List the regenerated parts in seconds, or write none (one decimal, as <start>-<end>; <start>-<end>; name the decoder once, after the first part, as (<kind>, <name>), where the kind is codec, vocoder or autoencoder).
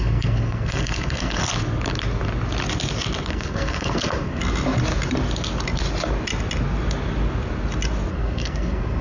0.0-1.4 (codec, SNAC); 3.3-4.4; 8.1-9.0